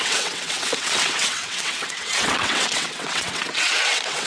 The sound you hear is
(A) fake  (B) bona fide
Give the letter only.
A